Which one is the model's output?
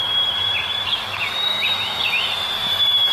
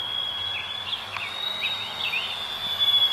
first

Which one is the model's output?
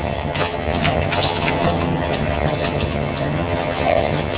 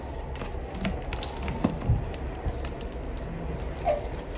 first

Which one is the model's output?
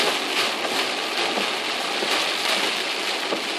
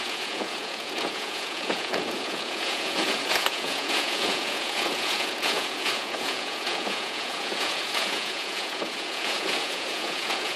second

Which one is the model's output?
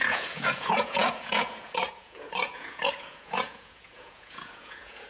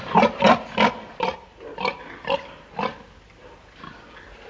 first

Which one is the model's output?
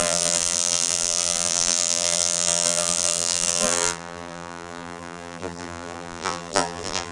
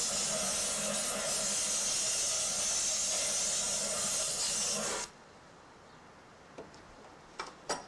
first